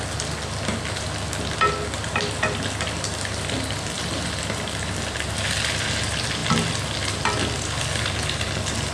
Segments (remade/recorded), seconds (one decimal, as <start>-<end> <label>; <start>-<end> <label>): 0.0-8.9 recorded